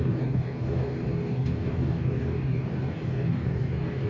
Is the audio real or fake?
fake